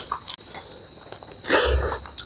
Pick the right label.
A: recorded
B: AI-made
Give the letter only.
A